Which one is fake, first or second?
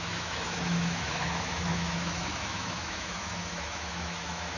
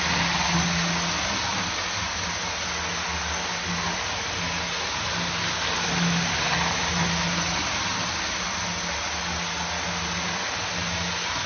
first